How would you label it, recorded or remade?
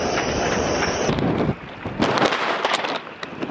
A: remade